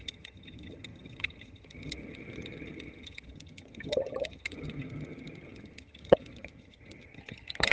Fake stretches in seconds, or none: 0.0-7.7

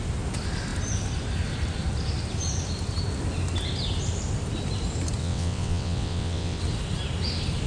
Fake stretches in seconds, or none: 5.2-6.6